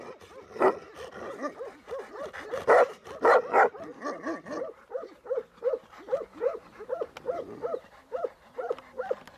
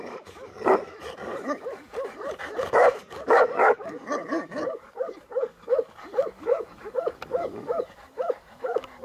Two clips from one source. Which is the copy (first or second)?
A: second